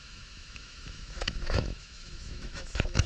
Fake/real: fake